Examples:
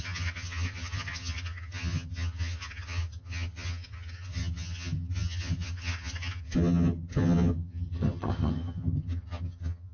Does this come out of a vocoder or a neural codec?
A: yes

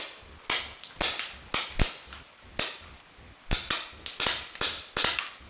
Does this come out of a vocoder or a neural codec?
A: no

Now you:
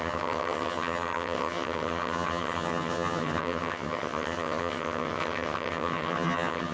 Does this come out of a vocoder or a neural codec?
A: yes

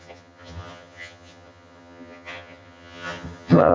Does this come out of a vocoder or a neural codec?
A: yes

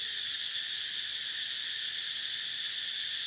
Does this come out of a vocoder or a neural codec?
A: no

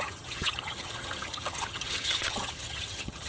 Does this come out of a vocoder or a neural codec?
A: yes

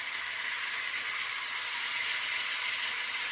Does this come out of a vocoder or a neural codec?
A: no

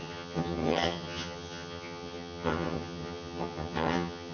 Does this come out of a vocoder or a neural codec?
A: yes